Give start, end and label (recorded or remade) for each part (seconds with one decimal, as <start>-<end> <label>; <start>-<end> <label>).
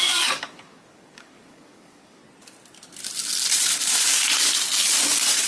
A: 0.0-2.2 remade; 2.2-5.5 recorded